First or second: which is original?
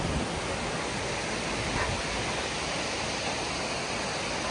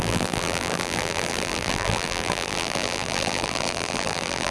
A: first